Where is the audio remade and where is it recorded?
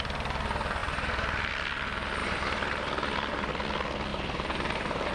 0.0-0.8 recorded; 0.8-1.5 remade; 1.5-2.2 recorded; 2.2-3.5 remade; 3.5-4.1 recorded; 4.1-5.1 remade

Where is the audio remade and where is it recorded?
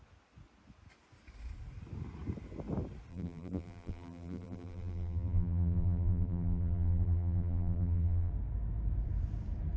0.0-3.1 recorded; 3.1-8.3 remade; 8.3-9.8 recorded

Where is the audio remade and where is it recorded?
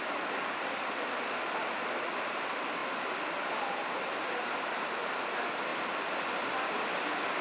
0.0-5.7 recorded; 5.7-6.2 remade; 6.2-7.4 recorded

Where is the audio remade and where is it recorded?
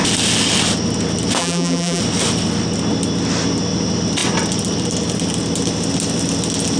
0.0-1.4 recorded; 1.4-2.0 remade; 2.0-6.8 recorded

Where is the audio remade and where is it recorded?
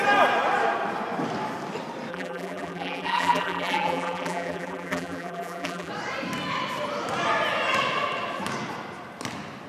0.0-2.1 recorded; 2.1-5.9 remade; 5.9-9.7 recorded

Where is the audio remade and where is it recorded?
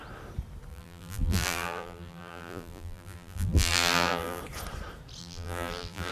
0.0-0.7 recorded; 0.7-4.4 remade; 4.4-5.2 recorded; 5.2-6.1 remade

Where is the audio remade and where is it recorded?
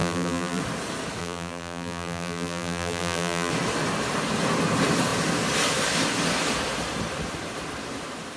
0.0-0.6 remade; 0.6-1.2 recorded; 1.2-3.5 remade; 3.5-8.4 recorded